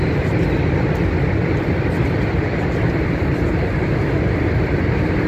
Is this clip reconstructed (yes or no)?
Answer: no